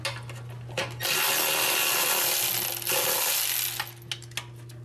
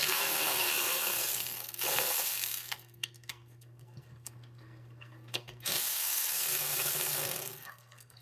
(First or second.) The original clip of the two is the first